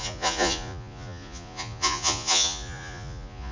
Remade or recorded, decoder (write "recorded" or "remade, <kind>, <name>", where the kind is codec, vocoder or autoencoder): remade, vocoder, Vocos